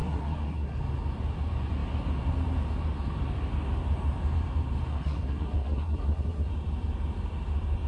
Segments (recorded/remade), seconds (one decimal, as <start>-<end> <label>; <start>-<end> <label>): 0.0-0.8 remade; 0.8-4.9 recorded; 4.9-6.5 remade; 6.5-7.9 recorded